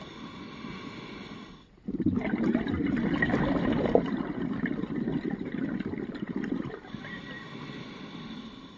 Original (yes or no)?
yes